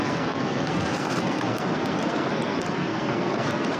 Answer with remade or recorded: remade